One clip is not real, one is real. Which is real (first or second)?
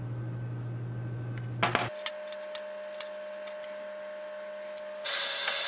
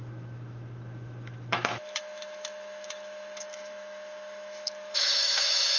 first